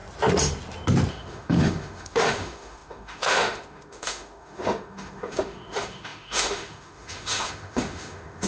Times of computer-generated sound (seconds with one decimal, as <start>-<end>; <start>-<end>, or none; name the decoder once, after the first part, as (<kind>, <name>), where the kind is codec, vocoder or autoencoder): 1.1-8.5 (autoencoder, DAC-VAE)